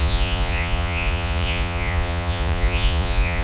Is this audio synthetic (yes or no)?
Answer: yes